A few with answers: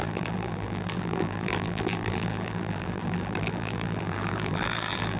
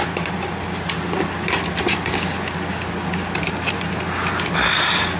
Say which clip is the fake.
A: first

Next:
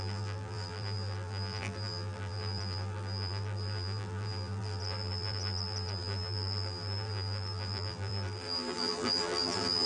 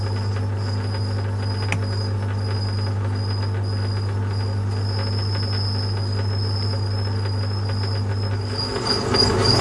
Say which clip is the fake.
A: first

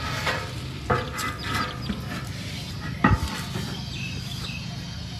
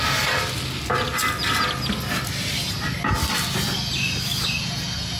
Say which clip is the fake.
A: first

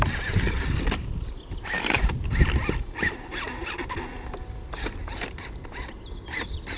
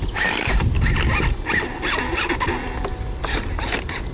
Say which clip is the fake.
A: first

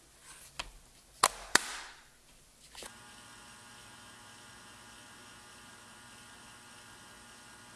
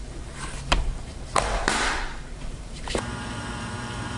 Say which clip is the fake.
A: second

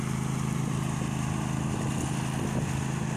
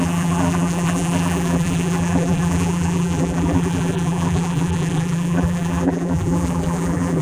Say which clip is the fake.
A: second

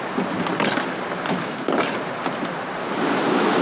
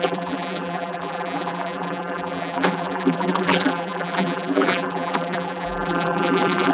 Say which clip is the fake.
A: second